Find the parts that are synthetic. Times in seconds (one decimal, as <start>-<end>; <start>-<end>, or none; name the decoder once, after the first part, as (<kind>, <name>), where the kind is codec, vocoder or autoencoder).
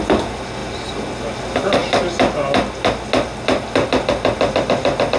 none